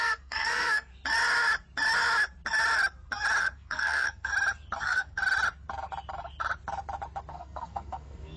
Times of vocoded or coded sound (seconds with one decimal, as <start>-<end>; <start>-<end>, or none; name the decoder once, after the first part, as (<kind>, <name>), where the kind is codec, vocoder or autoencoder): 0.0-0.9 (codec, SNAC); 3.4-4.3; 4.8-5.2; 7.3-8.4